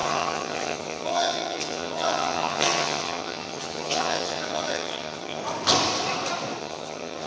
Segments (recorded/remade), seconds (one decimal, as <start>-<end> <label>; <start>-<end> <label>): 0.0-5.4 remade; 5.4-6.6 recorded; 6.6-7.3 remade